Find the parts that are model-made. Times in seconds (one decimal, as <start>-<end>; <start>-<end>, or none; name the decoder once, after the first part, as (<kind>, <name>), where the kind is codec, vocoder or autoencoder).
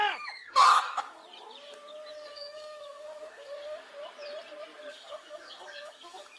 0.0-1.2 (codec, DAC); 2.1-3.9; 4.9-6.4